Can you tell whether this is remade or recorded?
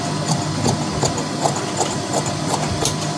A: recorded